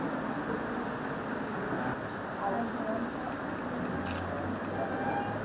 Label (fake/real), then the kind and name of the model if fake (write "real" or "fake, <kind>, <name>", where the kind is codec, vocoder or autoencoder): real